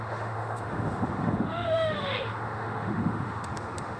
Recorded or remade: remade